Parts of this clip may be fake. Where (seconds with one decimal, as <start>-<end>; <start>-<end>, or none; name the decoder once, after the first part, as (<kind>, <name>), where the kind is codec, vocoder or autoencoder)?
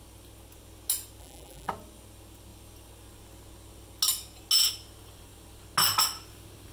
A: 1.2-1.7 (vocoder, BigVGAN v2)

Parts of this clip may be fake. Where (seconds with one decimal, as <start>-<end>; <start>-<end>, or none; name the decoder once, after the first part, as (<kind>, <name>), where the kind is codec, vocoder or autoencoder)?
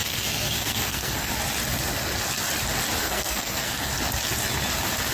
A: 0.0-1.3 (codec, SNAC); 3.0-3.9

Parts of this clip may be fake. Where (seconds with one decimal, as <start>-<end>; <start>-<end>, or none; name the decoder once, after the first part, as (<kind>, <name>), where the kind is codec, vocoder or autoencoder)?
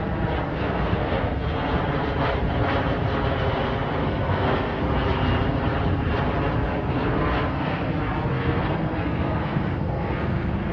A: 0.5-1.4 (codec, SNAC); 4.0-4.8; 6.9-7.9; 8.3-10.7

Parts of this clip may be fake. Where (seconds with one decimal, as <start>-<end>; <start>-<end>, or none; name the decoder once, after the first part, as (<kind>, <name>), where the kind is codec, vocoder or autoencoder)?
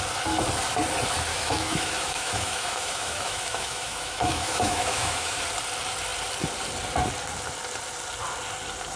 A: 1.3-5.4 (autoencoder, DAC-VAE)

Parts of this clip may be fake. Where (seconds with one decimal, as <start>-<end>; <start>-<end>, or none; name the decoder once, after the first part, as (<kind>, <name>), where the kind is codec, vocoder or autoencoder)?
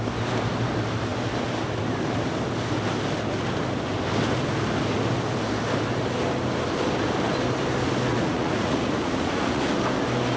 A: 8.1-9.6 (vocoder, Vocos)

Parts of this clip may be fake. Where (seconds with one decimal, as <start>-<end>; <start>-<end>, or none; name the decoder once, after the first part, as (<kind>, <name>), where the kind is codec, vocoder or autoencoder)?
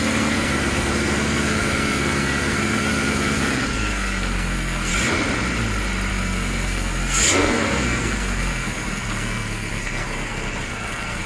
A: 0.0-4.9 (codec, SNAC); 6.1-11.3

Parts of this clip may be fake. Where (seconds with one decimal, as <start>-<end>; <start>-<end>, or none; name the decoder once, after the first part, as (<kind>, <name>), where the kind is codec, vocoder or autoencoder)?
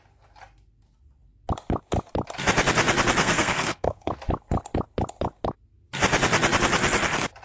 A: 3.2-4.1 (codec, SNAC)